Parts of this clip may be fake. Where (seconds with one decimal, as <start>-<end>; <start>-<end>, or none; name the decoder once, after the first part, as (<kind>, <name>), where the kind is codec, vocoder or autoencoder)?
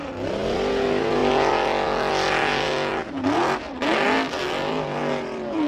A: none